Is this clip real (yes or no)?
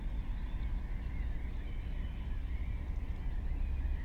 yes